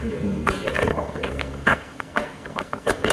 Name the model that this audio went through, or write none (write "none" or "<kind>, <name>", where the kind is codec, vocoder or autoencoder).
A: codec, SNAC